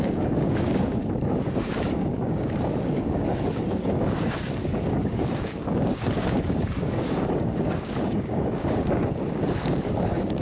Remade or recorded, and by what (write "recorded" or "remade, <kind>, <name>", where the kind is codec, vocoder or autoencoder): remade, codec, DAC